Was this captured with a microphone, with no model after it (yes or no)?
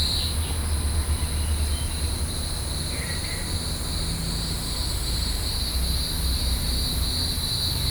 yes